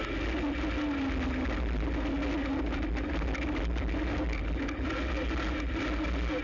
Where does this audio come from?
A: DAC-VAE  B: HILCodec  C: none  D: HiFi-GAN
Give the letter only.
C